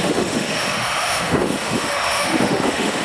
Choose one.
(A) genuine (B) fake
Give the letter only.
B